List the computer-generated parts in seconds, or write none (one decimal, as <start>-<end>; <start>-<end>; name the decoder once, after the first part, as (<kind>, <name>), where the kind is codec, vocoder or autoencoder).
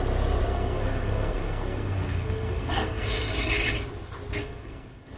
0.5-3.3 (codec, SNAC); 4.4-5.2